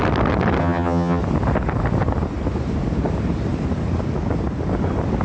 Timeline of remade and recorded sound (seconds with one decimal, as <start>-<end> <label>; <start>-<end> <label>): 0.0-0.6 recorded; 0.6-1.2 remade; 1.2-5.2 recorded